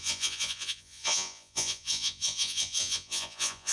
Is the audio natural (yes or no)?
no